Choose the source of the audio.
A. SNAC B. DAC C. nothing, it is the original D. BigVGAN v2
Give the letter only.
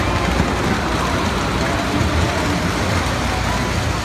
C